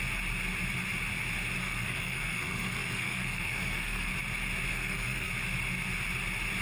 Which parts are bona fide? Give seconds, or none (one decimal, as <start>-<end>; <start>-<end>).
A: 0.0-1.6; 4.1-4.7; 5.3-6.6